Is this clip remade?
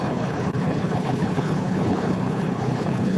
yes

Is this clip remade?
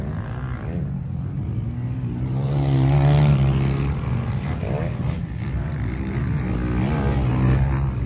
no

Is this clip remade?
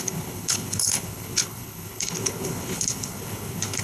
yes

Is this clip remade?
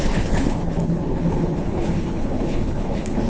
yes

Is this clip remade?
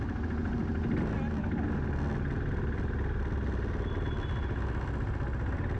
no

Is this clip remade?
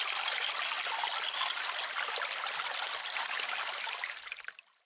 no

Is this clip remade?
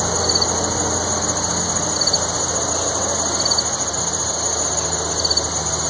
no